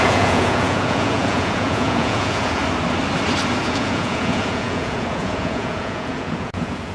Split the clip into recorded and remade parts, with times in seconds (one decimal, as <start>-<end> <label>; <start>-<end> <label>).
0.0-2.6 remade; 2.6-3.6 recorded; 3.6-6.9 remade